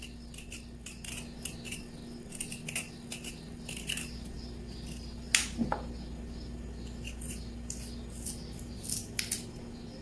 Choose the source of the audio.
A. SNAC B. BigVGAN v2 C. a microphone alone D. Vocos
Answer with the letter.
C